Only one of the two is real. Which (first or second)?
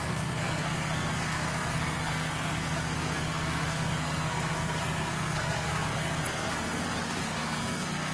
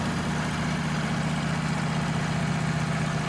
second